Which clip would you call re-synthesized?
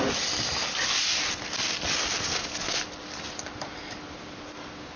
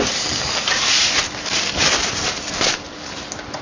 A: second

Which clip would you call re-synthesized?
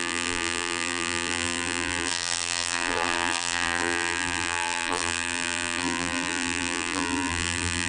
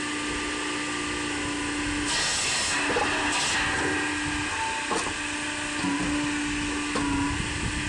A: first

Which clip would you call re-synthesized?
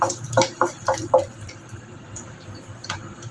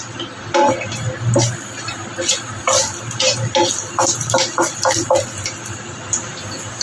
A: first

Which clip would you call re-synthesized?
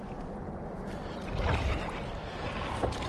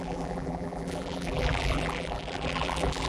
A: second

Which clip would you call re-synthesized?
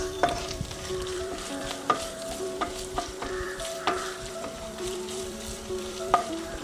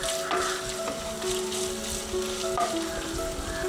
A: first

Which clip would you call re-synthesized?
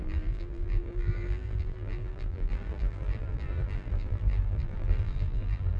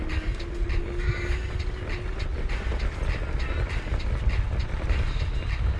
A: first